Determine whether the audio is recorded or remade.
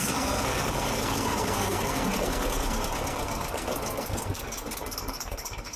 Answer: remade